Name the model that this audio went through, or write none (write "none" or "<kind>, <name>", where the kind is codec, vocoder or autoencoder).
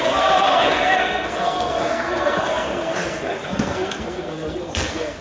codec, SNAC